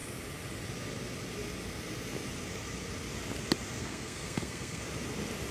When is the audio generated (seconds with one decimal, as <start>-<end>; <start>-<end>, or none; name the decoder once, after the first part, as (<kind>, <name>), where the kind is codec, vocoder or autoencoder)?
3.8-4.8 (codec, SNAC)